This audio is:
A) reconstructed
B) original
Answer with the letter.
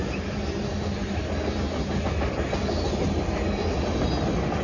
B